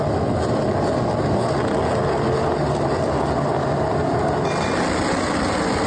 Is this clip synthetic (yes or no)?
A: no